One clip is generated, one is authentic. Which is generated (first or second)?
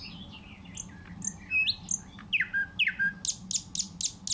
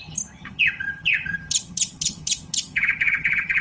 second